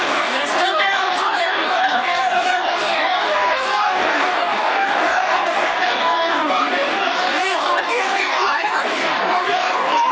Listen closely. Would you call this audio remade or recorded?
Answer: remade